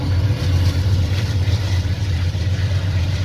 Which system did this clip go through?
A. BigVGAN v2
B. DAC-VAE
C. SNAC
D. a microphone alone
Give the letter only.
A